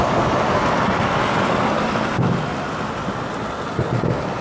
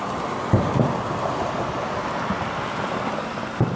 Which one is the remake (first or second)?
second